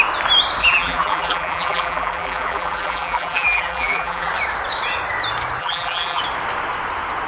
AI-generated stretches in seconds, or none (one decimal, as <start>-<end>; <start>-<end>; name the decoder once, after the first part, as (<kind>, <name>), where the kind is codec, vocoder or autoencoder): 0.6-4.3 (vocoder, BigVGAN v2); 5.6-6.2